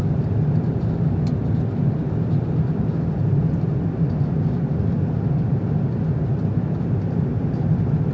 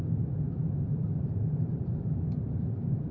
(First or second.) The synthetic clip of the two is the second